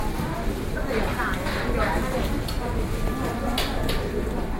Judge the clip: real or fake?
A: real